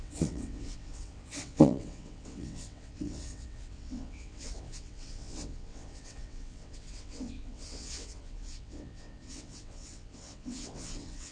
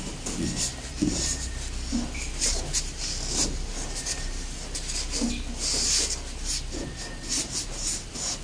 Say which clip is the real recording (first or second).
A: second